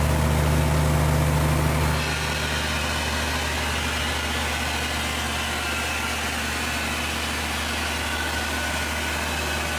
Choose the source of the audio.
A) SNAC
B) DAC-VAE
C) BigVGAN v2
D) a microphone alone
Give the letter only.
D